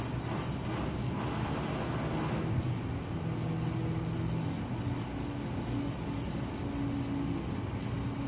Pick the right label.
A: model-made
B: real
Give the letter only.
B